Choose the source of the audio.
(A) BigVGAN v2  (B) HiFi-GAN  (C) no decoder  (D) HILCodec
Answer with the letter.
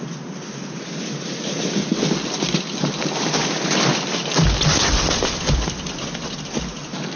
C